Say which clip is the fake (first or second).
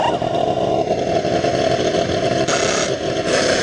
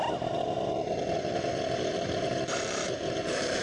second